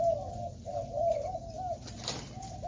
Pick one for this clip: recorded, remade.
recorded